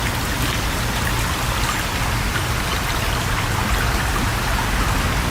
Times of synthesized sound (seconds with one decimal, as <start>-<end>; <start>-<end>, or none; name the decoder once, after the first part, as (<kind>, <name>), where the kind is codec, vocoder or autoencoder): none